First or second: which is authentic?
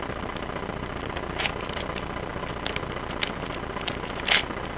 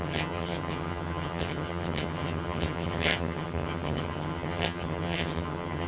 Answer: first